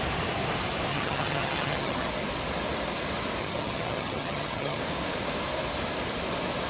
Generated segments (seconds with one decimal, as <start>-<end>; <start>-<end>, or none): 0.9-2.1; 3.4-4.8